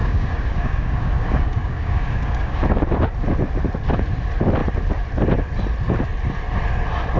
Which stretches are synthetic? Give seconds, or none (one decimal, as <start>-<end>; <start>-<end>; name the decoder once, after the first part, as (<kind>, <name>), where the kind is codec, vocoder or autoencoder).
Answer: 0.0-2.6 (codec, DAC)

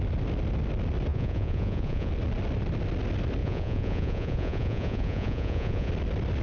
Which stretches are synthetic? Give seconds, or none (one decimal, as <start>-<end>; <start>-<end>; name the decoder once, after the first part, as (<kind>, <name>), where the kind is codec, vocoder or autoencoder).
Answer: 1.1-2.1 (vocoder, Vocos); 3.4-5.9

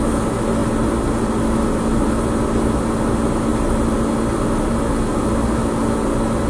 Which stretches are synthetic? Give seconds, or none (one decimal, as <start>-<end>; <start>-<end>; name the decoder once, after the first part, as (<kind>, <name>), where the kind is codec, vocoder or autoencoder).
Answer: none

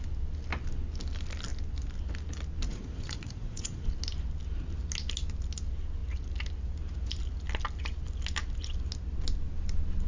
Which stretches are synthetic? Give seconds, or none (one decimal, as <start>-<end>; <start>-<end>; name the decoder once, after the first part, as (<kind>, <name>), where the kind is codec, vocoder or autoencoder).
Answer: 2.7-3.9 (vocoder, Vocos)

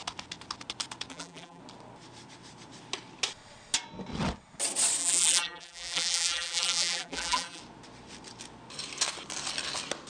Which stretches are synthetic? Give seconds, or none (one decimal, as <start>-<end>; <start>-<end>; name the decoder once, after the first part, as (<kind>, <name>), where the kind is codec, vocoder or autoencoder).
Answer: 1.1-1.6 (vocoder, BigVGAN v2); 5.0-7.6

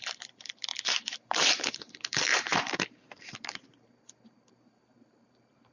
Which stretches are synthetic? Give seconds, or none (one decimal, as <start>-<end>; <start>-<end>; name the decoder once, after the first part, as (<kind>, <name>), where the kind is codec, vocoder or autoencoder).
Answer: 0.0-5.7 (vocoder, BigVGAN v2)

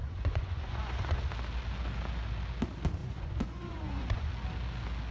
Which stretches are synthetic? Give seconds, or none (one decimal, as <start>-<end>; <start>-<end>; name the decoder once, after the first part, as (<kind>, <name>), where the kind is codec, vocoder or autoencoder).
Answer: 0.0-1.2 (vocoder, Vocos); 3.0-4.3

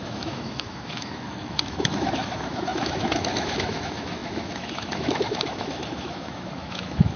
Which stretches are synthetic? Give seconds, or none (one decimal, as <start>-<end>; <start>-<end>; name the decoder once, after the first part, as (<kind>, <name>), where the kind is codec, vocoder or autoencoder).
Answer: 0.0-7.2 (autoencoder, DAC-VAE)